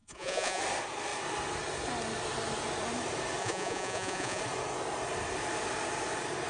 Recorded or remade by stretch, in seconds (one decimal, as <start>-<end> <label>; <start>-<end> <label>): 0.0-0.6 remade; 0.6-3.4 recorded; 3.4-4.4 remade; 4.4-6.5 recorded